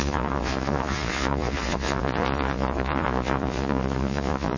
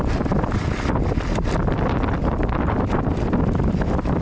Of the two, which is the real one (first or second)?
second